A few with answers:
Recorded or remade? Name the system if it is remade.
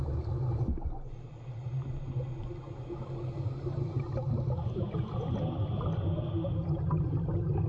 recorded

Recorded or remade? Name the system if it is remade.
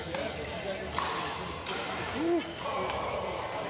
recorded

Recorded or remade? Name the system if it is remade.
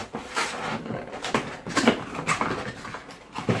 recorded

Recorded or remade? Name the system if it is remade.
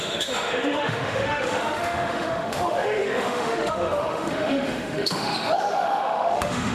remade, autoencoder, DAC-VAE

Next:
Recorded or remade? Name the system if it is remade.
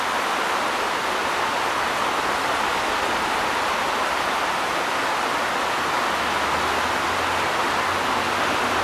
recorded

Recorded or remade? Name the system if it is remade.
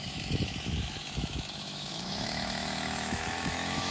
remade, autoencoder, DAC-VAE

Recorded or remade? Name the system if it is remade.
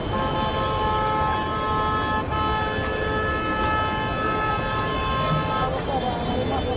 recorded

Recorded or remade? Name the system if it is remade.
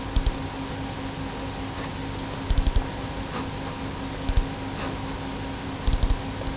recorded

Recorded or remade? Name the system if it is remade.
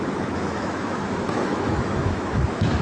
remade, autoencoder, DAC-VAE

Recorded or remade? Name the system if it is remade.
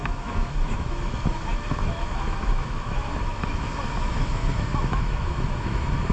remade, autoencoder, DAC-VAE